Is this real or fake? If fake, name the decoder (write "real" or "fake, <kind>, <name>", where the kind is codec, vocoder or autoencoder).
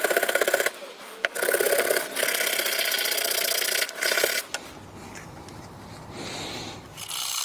real